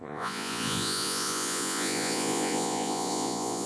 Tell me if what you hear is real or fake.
fake